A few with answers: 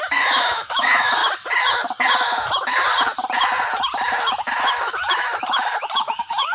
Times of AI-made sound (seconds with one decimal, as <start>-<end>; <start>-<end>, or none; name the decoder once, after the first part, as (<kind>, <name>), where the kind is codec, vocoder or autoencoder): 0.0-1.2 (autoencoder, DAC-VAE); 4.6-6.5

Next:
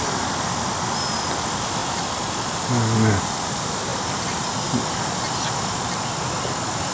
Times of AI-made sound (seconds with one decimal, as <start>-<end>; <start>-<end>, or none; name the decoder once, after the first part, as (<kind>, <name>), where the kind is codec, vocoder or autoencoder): none

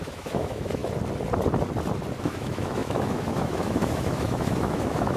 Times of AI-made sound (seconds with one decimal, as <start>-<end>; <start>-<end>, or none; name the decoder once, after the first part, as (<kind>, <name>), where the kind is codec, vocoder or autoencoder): 0.0-0.8 (autoencoder, DAC-VAE); 2.2-5.2

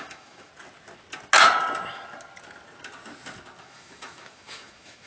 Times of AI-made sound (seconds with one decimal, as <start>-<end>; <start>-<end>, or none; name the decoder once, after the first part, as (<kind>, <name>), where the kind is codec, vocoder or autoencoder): 0.0-0.5 (autoencoder, DAC-VAE); 3.6-5.1

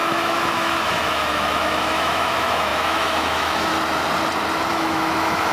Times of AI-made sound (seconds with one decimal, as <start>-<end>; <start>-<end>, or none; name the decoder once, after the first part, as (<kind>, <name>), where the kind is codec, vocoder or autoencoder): 0.0-3.7 (autoencoder, DAC-VAE); 4.7-5.5